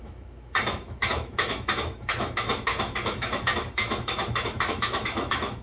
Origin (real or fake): fake